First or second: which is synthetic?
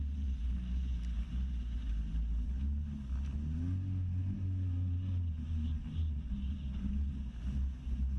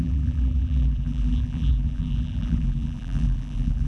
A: second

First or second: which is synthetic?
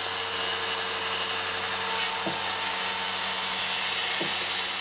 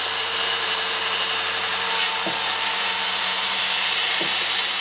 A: second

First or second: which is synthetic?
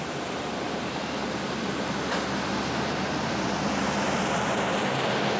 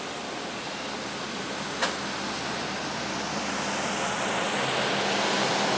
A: first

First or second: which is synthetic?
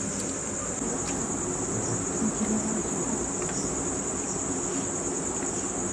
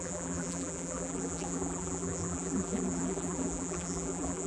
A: second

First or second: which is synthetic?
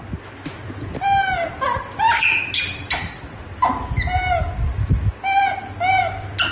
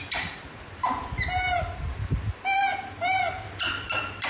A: second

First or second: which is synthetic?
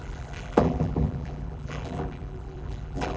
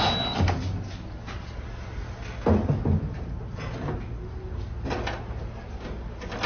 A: first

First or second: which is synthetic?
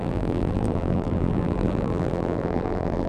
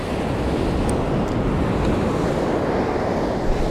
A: first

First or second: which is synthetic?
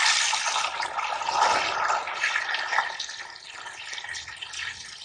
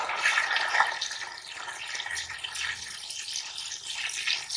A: first